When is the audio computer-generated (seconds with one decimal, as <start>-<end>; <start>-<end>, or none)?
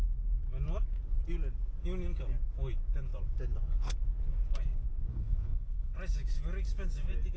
5.1-5.9